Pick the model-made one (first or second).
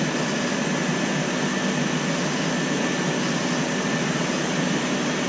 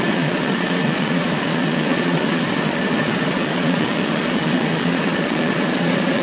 second